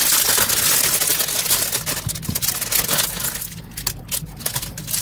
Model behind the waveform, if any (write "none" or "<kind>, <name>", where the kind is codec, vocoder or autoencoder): none